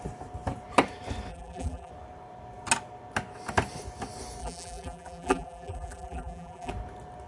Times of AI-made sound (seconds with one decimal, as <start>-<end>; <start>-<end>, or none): 1.3-1.9; 4.4-6.7